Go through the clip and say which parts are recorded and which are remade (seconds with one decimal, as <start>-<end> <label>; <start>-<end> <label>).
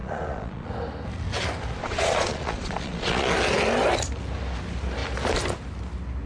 0.0-0.7 remade; 0.7-1.8 recorded; 1.8-3.3 remade; 3.3-6.3 recorded